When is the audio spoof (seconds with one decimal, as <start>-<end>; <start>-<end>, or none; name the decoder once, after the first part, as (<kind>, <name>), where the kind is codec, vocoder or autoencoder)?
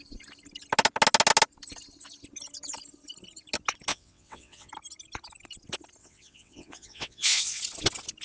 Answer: 3.9-4.7 (vocoder, WaveNeXt); 6.0-7.6